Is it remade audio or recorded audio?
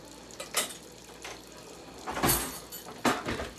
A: recorded